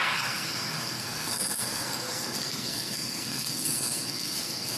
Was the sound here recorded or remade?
remade